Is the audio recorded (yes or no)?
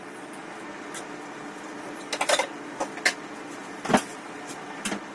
yes